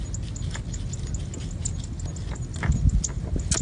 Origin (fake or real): real